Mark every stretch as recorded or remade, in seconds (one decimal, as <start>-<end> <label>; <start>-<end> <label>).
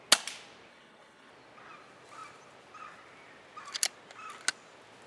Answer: 0.0-0.7 recorded; 0.7-1.3 remade; 1.3-5.1 recorded